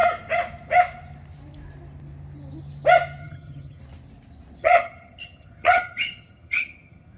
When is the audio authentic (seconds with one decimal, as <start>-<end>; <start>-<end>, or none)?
0.0-3.2; 3.8-4.6